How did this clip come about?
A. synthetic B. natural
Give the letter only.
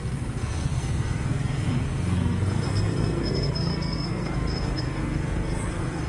A